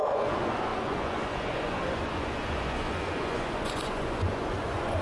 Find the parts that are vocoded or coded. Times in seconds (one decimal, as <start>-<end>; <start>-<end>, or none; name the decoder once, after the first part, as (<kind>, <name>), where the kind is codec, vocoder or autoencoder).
0.0-5.0 (vocoder, Vocos)